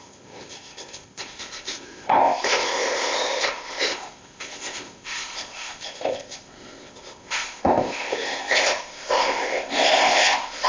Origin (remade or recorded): remade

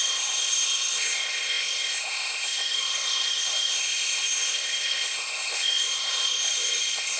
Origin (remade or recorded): remade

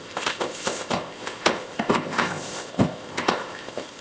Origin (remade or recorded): remade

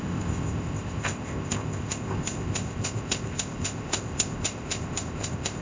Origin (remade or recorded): remade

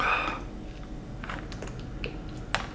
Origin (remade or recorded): recorded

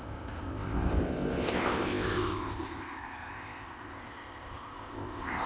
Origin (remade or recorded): remade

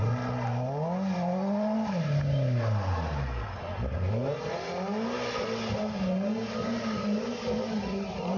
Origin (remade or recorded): recorded